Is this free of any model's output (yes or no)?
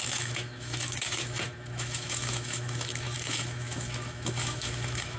no